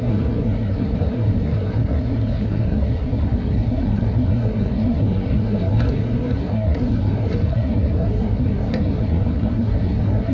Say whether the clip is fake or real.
fake